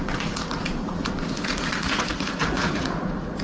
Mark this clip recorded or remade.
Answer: remade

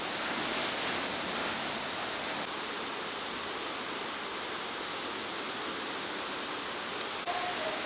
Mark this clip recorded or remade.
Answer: recorded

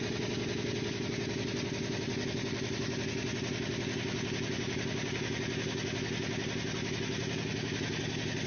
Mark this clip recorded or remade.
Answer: recorded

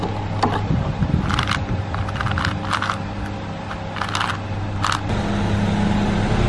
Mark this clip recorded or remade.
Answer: recorded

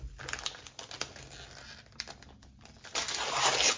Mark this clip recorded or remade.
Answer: recorded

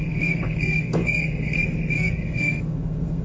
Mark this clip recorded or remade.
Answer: remade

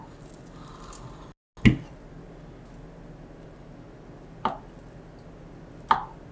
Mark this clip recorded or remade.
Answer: recorded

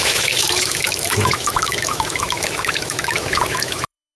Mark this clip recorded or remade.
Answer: remade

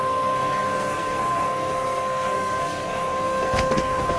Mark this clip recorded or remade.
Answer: remade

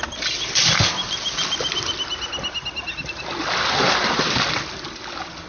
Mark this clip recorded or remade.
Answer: recorded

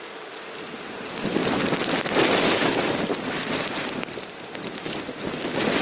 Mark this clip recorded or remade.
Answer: recorded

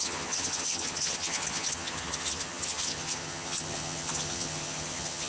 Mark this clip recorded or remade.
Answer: remade